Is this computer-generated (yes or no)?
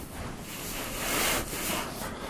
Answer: no